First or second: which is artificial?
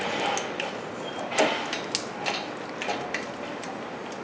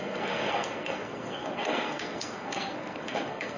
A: second